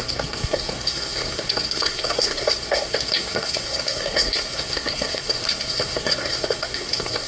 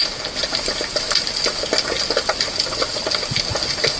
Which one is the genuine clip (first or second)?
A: second